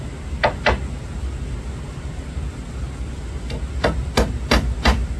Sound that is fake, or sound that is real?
real